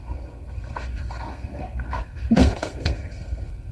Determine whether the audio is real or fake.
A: fake